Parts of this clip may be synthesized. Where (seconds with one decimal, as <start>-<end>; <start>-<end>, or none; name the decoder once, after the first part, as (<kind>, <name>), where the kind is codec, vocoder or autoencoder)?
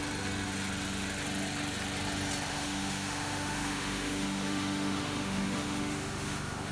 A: 2.5-6.7 (autoencoder, DAC-VAE)